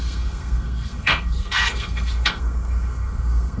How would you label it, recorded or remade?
remade